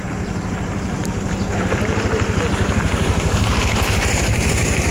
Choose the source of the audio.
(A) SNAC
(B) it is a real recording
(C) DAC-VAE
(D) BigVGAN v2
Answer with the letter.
D